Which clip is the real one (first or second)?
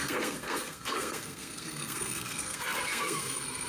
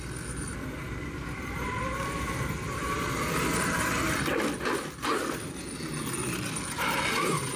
second